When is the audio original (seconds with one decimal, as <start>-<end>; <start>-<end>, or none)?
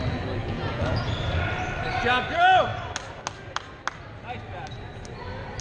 0.0-0.4; 1.1-5.6